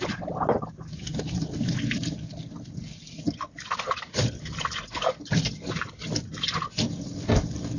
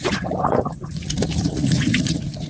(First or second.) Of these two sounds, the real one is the first